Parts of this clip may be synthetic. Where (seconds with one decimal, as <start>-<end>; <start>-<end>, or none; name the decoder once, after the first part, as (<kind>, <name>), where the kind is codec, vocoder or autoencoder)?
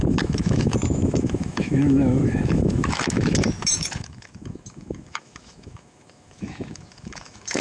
0.0-7.6 (autoencoder, DAC-VAE)